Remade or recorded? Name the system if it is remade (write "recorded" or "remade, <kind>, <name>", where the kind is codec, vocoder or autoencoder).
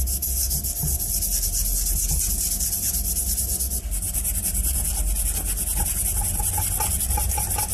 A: recorded